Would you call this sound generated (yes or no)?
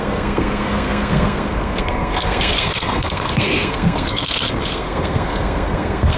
yes